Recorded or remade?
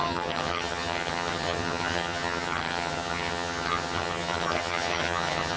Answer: remade